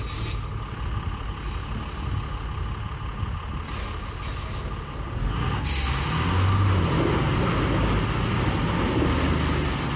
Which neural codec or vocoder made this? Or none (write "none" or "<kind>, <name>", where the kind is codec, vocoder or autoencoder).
none